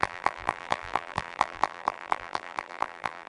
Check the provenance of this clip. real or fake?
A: fake